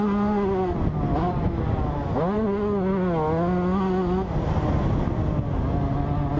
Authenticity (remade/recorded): recorded